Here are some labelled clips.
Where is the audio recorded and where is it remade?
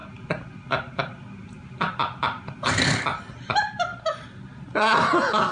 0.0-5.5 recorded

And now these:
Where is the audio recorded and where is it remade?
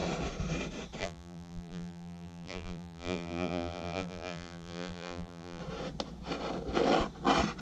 0.0-1.0 recorded; 1.0-5.6 remade; 5.6-7.6 recorded